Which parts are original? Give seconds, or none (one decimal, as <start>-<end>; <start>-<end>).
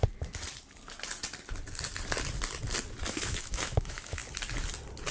0.0-3.1; 4.2-5.1